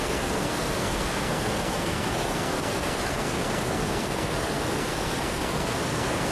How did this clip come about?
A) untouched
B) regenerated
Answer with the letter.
B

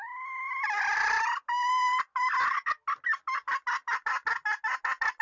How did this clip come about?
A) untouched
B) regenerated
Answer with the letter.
A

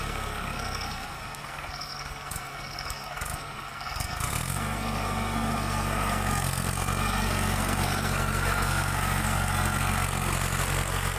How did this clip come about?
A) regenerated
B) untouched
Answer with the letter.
A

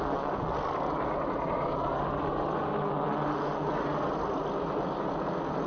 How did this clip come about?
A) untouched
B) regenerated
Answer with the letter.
A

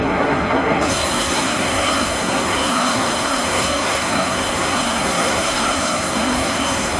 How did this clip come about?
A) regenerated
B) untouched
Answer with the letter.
A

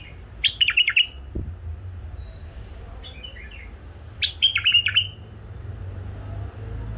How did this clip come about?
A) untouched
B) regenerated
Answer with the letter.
A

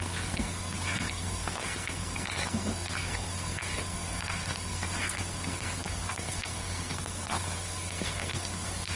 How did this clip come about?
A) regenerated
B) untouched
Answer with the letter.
A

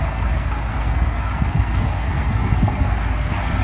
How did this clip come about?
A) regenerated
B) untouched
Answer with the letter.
A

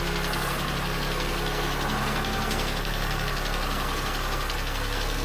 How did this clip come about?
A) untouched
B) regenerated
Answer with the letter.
B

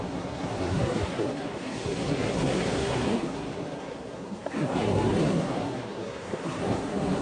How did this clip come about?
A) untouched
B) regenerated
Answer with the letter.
B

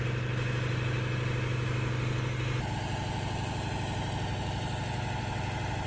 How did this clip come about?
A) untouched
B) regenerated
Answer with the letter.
A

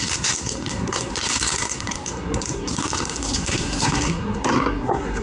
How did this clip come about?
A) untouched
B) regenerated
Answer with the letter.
B